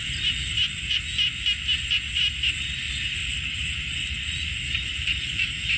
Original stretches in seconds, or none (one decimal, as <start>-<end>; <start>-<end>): 0.0-3.2; 4.5-4.9